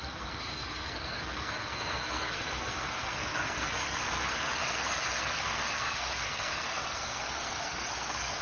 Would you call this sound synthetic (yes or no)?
yes